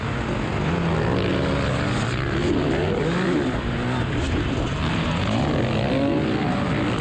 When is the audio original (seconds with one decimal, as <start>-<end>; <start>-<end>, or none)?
0.0-7.0